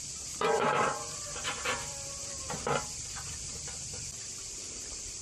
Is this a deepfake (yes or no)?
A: yes